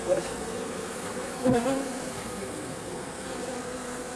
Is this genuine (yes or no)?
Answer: no